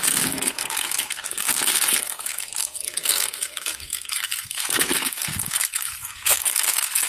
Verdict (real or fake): fake